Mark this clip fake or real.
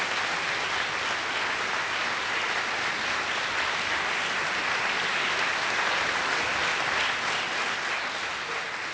real